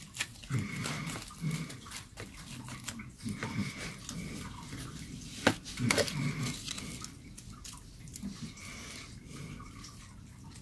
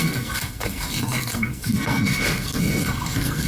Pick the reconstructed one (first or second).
second